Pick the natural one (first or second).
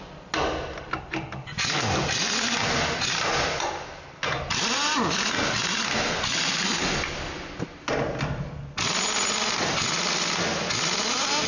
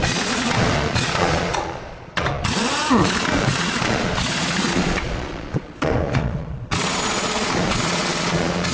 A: first